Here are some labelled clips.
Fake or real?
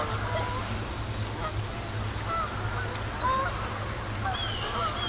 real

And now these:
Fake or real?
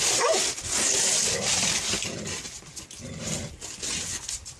real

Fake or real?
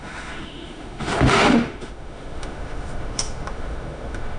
fake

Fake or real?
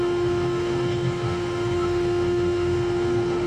fake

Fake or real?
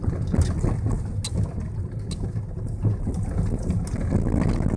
real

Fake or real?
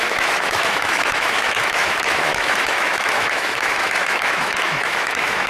fake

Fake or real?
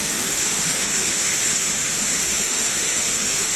fake